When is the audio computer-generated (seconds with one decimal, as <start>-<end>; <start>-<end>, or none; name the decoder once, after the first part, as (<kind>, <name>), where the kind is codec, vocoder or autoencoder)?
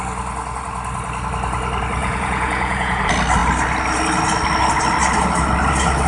2.0-3.0 (vocoder, Vocos)